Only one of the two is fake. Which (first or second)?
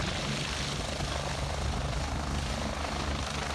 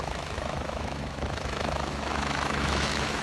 second